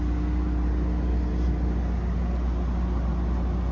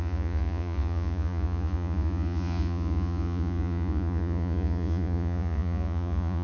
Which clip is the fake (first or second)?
second